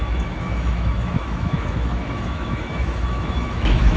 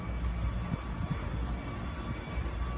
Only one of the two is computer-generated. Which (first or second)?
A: first